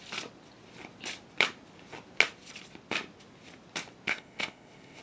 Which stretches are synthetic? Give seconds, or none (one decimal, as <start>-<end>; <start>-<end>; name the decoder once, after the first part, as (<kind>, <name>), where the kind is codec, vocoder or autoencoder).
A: 4.1-5.0 (codec, ZipCodec)